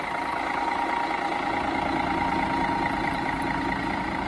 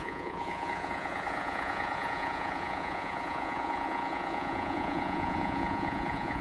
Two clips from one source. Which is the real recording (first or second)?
first